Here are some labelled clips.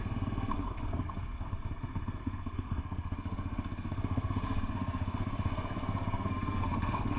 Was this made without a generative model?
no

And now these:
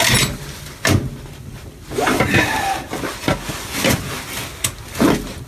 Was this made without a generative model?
yes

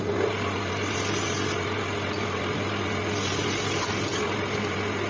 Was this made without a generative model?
yes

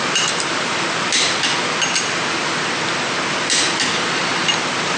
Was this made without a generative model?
yes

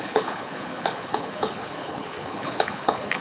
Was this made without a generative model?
no